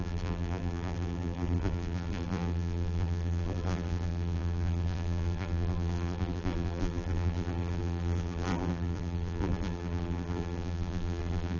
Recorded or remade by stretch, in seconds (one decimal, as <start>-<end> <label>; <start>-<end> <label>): 0.0-11.6 remade